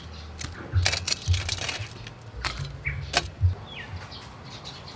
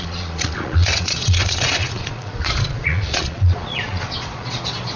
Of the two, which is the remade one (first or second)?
second